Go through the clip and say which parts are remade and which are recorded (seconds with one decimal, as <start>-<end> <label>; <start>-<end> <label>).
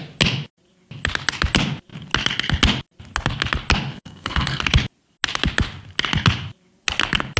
0.0-3.9 recorded; 3.9-4.6 remade; 4.6-7.4 recorded